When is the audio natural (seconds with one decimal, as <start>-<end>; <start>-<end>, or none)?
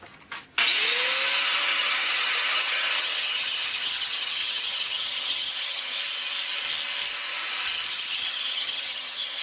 0.0-1.7; 6.0-7.9